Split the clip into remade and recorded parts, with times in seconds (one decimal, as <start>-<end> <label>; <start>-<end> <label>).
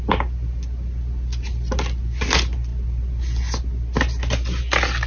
0.0-5.1 recorded